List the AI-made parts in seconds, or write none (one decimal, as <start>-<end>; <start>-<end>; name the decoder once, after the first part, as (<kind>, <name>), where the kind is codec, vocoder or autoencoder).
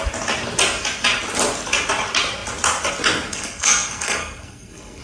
3.3-5.0 (codec, SNAC)